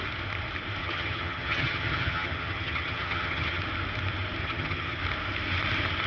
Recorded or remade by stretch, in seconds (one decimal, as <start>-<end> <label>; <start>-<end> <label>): 0.0-0.8 recorded; 0.8-3.6 remade; 3.6-4.4 recorded; 4.4-5.0 remade; 5.0-6.1 recorded